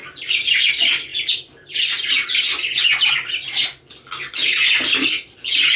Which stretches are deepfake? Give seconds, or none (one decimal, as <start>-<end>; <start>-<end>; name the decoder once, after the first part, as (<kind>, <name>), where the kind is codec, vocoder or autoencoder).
0.0-0.7 (vocoder, BigVGAN v2)